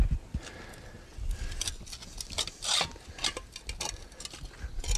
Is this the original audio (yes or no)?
yes